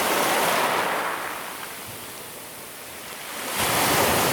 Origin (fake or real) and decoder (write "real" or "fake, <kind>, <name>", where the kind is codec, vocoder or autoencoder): real